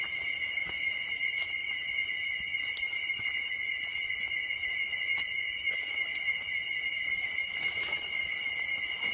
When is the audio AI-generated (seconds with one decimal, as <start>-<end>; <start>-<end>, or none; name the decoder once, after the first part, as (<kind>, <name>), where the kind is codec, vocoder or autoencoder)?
6.9-8.3 (vocoder, BigVGAN v2)